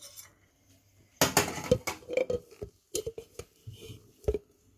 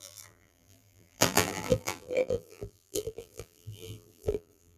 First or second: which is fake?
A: second